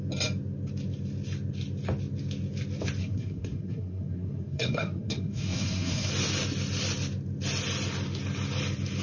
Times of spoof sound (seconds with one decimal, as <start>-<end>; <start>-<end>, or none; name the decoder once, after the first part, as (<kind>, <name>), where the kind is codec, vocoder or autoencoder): 3.0-6.1 (codec, SNAC)